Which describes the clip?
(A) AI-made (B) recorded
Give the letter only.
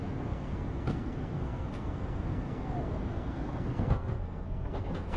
A